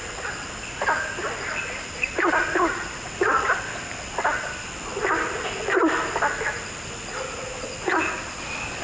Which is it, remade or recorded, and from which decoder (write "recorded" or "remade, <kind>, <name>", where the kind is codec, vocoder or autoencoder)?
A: recorded